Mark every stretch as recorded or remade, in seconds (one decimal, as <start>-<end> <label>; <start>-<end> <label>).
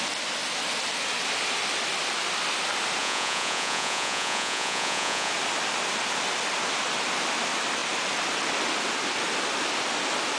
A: 0.0-3.0 recorded; 3.0-5.3 remade; 5.3-10.4 recorded